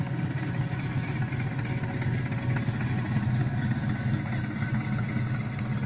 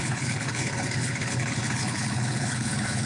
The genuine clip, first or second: first